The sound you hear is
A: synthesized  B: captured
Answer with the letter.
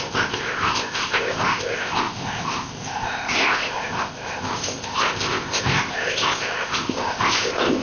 A